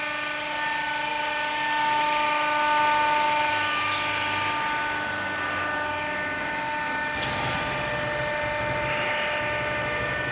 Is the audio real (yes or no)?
yes